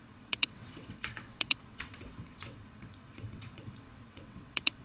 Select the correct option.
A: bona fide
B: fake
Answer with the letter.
B